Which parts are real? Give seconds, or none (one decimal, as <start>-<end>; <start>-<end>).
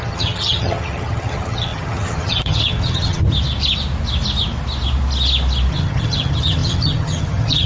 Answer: 3.2-5.7